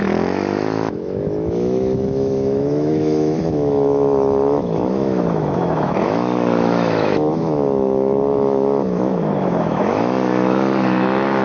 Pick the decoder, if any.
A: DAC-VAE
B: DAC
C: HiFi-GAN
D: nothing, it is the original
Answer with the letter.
A